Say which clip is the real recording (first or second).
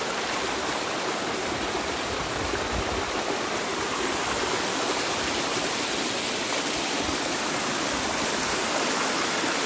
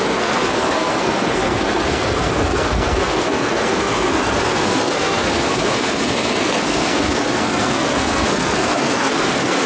first